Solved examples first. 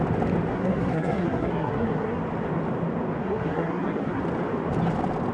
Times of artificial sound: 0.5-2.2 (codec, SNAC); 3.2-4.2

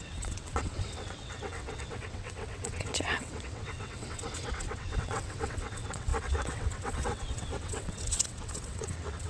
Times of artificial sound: 0.0-9.3 (vocoder, WaveNeXt)

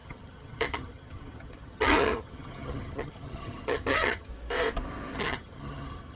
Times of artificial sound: 0.0-4.3 (vocoder, HiFi-GAN); 5.2-6.2

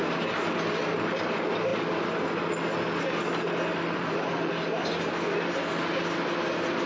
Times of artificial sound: 3.7-4.5 (vocoder, BigVGAN v2)

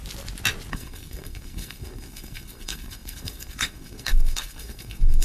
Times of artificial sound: 0.7-5.2 (codec, SNAC)

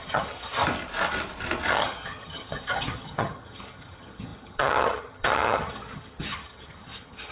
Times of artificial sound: 0.0-0.6 (vocoder, HiFi-GAN); 1.7-7.3

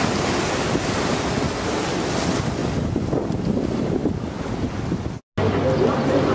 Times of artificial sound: none

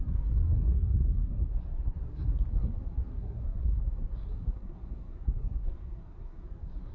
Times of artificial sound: 0.0-6.9 (codec, SNAC)